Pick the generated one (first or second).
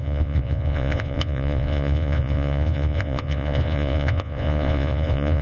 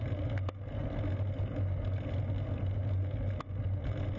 first